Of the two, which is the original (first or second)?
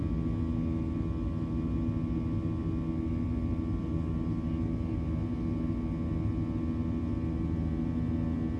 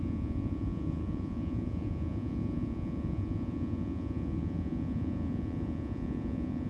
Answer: first